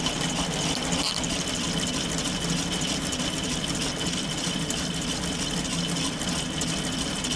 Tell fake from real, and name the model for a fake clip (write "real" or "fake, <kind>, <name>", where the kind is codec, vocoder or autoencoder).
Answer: real